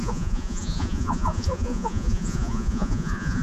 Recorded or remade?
remade